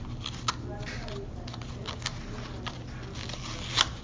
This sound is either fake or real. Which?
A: real